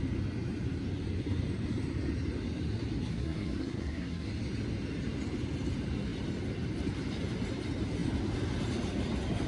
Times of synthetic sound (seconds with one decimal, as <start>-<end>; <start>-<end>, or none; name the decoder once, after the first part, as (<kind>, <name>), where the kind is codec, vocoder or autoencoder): 3.1-4.3 (codec, SNAC)